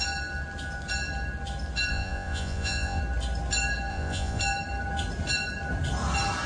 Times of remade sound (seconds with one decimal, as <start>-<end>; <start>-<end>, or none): 1.9-3.0; 3.9-4.4